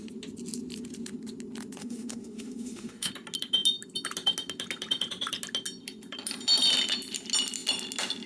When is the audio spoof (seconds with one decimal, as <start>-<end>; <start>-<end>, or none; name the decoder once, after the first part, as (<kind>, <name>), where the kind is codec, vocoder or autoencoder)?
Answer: 1.8-3.1 (autoencoder, DAC-VAE)